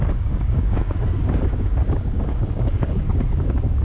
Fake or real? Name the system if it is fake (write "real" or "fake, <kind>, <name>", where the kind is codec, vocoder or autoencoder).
fake, codec, DAC